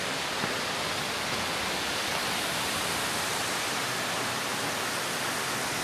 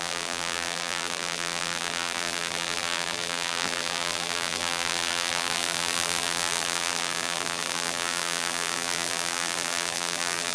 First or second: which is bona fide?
first